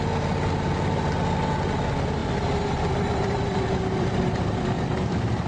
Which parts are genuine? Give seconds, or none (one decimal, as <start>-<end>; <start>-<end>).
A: 0.0-2.2; 4.6-5.5